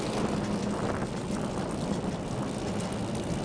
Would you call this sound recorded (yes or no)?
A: yes